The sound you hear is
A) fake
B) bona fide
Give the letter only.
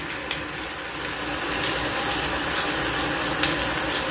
B